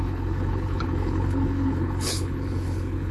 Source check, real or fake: fake